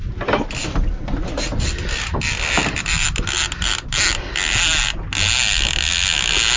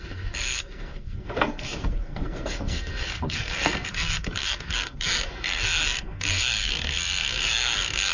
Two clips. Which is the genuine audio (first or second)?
first